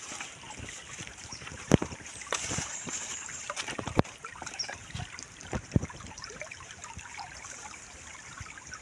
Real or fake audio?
fake